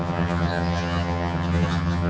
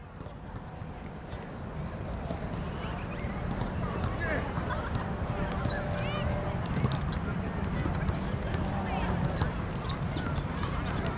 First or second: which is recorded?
second